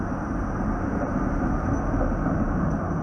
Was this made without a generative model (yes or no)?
yes